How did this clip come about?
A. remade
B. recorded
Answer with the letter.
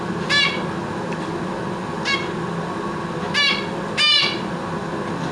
B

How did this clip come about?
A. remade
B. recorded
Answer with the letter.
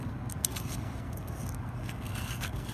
A